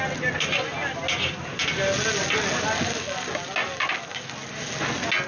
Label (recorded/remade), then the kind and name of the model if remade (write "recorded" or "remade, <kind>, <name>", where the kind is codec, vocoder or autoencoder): recorded